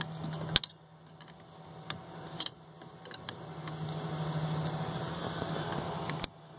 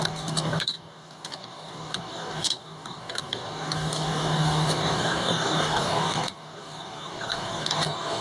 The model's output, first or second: second